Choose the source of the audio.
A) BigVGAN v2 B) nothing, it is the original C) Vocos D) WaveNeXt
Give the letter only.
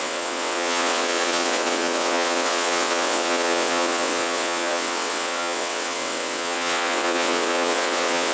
D